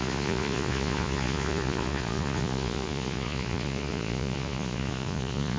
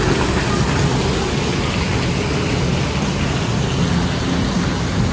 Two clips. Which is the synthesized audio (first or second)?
first